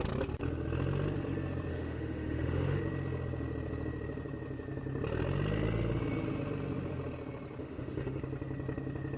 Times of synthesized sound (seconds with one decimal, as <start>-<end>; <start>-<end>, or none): 1.7-2.8; 7.6-8.2